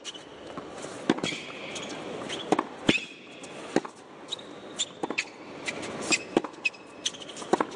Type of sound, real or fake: real